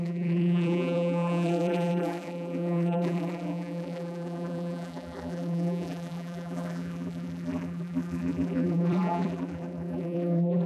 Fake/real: fake